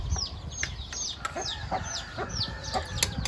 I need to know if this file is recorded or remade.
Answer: recorded